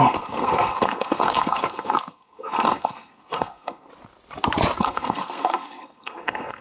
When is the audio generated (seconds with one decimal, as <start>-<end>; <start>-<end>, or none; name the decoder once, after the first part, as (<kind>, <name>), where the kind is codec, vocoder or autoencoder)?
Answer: 0.0-3.9 (codec, SNAC); 4.8-6.6